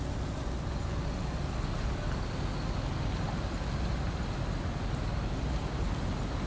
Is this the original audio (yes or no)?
yes